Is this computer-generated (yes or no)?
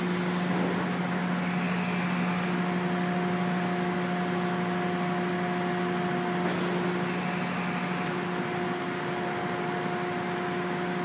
no